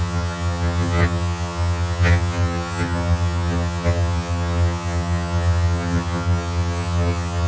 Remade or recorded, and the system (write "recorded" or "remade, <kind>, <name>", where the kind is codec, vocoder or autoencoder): remade, vocoder, HiFi-GAN